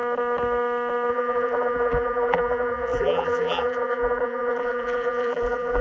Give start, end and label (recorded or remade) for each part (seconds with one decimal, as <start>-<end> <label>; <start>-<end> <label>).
0.0-1.1 recorded; 1.1-5.8 remade